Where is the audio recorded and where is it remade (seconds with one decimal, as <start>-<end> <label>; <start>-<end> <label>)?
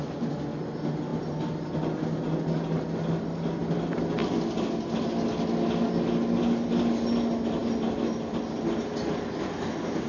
0.0-10.1 recorded